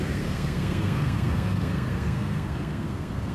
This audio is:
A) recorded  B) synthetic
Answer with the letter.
B